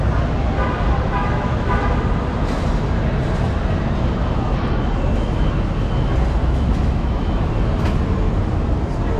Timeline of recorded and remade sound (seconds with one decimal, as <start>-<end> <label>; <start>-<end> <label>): 0.0-1.2 recorded; 1.2-1.9 remade; 1.9-6.4 recorded; 6.4-7.5 remade; 7.5-9.2 recorded